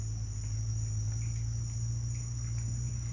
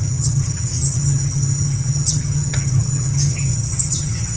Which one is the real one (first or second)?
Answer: first